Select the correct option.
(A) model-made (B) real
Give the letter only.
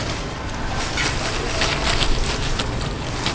A